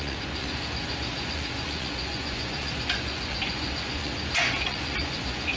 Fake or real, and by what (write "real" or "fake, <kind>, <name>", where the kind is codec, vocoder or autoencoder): fake, vocoder, Vocos